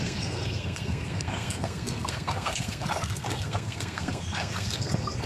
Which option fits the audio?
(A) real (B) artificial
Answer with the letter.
B